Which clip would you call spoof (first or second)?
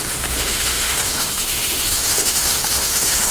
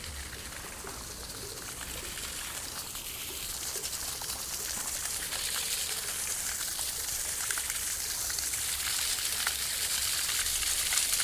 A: first